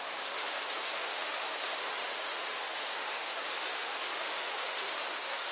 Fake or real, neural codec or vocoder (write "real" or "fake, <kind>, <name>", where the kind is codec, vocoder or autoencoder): fake, autoencoder, DAC-VAE